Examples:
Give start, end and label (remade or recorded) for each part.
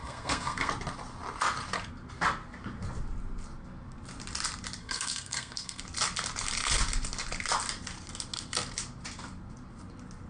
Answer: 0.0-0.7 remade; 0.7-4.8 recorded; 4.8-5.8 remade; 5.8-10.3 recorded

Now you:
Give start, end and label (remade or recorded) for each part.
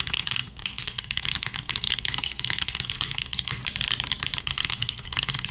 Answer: 0.0-3.6 remade; 3.6-4.4 recorded; 4.4-5.5 remade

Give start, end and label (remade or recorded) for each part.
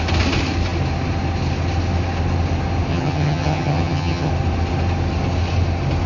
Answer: 0.0-2.9 recorded; 2.9-4.3 remade; 4.3-6.1 recorded